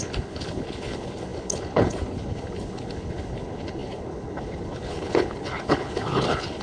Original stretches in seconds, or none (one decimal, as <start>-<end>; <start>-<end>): none